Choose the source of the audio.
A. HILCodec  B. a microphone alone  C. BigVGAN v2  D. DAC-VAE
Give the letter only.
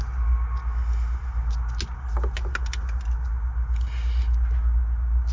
B